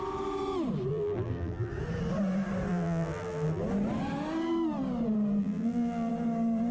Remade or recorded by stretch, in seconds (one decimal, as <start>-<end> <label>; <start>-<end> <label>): 0.0-0.9 recorded; 0.9-1.7 remade; 1.7-2.7 recorded; 2.7-3.6 remade; 3.6-5.4 recorded; 5.4-6.1 remade; 6.1-6.7 recorded